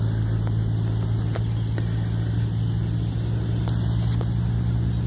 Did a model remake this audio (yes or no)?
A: no